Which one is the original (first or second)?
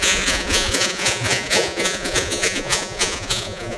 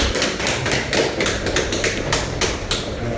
second